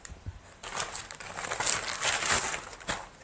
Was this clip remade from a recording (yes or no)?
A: no